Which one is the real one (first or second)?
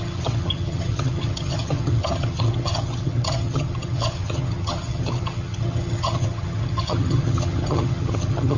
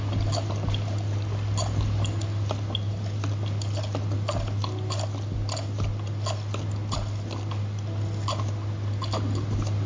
second